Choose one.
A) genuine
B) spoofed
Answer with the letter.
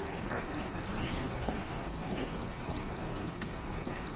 B